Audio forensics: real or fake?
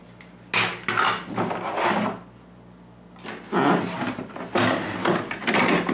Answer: real